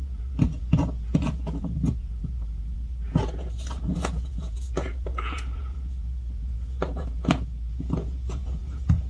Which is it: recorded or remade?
remade